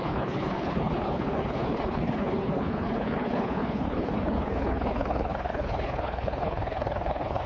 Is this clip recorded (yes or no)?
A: no